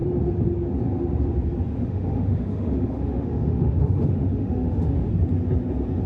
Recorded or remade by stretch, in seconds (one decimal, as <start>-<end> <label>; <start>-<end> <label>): 0.0-1.7 recorded; 1.7-5.1 remade; 5.1-6.1 recorded